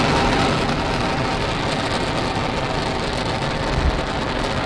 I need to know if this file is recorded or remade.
recorded